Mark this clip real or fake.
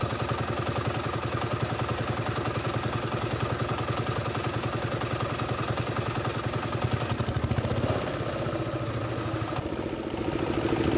real